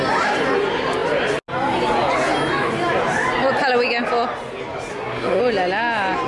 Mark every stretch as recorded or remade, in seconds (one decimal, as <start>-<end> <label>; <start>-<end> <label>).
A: 0.0-4.9 recorded; 4.9-5.4 remade; 5.4-6.3 recorded